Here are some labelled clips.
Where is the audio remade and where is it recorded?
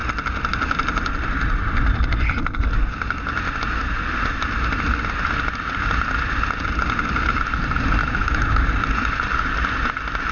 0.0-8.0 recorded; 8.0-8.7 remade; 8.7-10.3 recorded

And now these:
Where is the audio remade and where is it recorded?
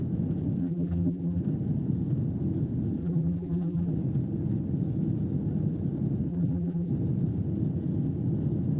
0.0-0.6 recorded; 0.6-1.4 remade; 1.4-3.0 recorded; 3.0-3.9 remade; 3.9-6.3 recorded; 6.3-6.9 remade; 6.9-8.8 recorded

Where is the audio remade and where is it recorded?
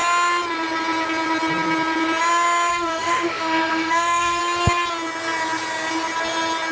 0.0-2.7 recorded; 2.7-4.4 remade; 4.4-6.7 recorded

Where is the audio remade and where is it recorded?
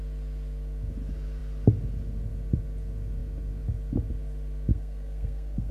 0.0-4.7 recorded; 4.7-5.7 remade